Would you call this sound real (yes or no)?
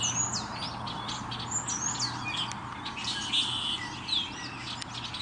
yes